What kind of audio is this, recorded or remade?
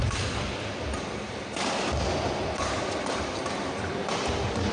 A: recorded